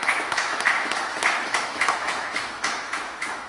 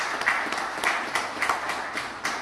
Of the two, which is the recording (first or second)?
second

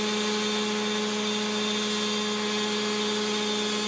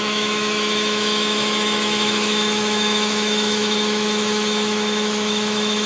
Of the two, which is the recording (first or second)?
first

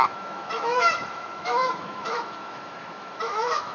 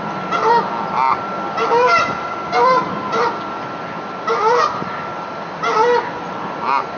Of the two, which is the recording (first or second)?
second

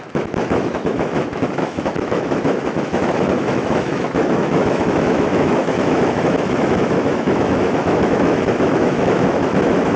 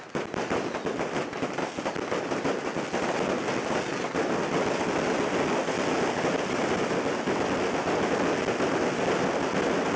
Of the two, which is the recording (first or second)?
second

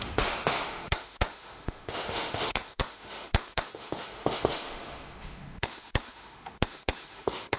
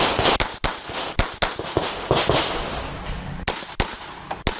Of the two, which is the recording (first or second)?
second